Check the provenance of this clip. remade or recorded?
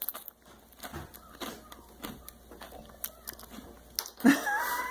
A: recorded